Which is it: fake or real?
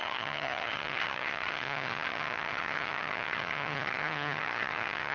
fake